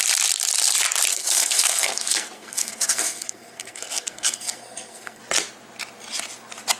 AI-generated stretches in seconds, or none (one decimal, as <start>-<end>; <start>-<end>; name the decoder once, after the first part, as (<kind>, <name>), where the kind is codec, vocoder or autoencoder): 1.1-5.2 (codec, SNAC)